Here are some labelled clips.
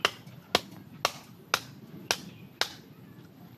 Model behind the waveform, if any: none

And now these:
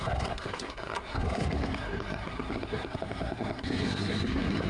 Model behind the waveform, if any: codec, SNAC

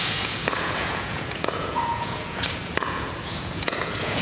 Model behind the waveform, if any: vocoder, Vocos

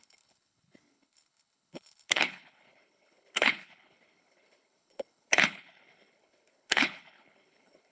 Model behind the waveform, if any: codec, HILCodec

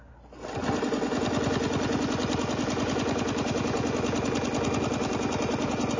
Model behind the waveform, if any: none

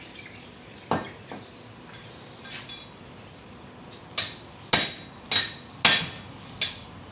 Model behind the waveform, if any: none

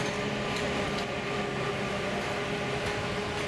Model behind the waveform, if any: none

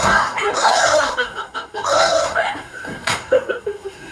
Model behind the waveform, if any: codec, SNAC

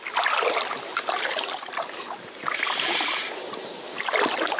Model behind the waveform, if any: none